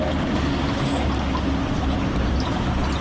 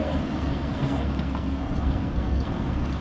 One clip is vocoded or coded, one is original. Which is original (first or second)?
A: first